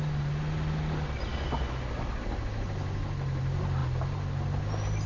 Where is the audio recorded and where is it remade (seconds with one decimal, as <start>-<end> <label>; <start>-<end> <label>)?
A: 0.0-5.1 recorded